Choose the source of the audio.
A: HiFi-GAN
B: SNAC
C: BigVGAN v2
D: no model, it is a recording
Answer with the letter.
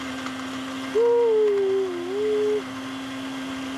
D